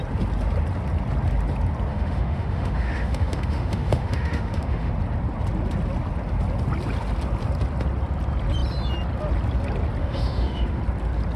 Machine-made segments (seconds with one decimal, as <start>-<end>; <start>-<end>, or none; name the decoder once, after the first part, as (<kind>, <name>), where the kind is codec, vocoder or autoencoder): 1.9-4.9 (autoencoder, DAC-VAE); 10.0-10.8